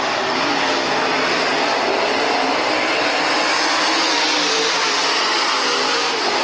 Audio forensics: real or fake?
real